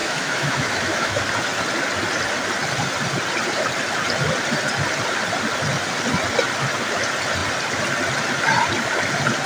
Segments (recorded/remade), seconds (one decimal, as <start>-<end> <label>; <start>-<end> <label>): 0.0-1.2 remade; 1.2-9.5 recorded